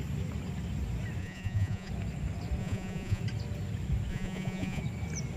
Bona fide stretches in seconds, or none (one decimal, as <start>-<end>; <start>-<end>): 0.0-1.2; 1.9-2.6; 3.2-4.1; 4.8-5.4